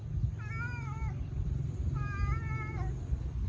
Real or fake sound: real